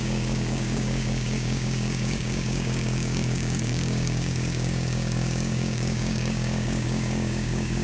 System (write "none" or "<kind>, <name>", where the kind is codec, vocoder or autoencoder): codec, DAC